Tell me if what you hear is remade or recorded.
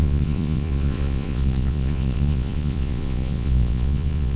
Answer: remade